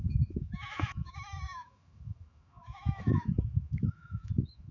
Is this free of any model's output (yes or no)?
no